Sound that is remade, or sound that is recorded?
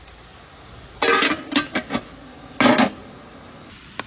recorded